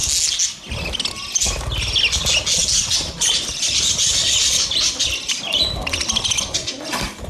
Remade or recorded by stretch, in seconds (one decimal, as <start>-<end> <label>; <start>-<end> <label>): 0.0-2.6 recorded; 2.6-6.3 remade; 6.3-7.3 recorded